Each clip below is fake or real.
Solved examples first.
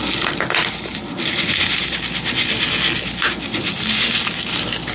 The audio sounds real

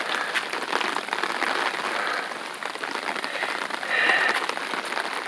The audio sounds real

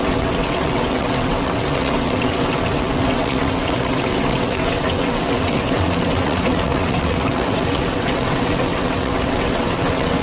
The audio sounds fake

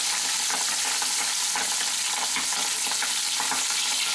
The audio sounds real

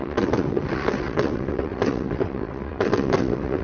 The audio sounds fake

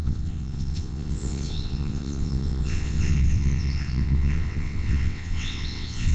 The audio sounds fake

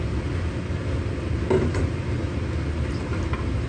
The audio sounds real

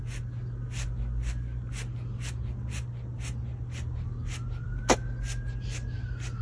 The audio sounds real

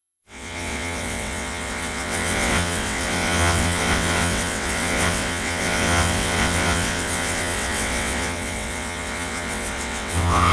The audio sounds fake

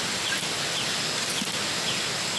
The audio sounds real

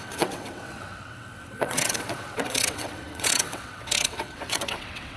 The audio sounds fake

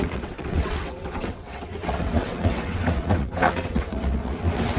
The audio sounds fake